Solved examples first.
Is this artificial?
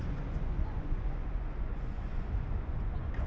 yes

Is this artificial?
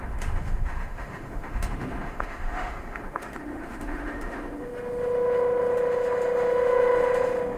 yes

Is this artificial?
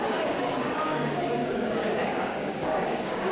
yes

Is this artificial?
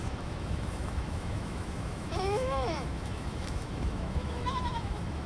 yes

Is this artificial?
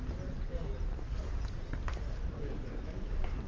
no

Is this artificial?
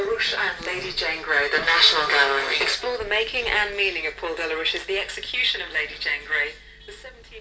no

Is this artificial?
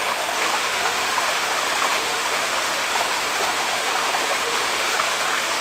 yes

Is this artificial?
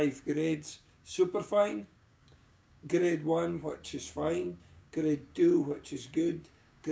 yes